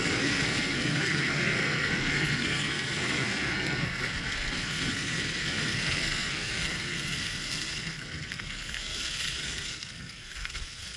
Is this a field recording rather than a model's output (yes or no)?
no